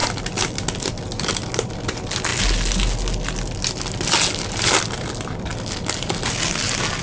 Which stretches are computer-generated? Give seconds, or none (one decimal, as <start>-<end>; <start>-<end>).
none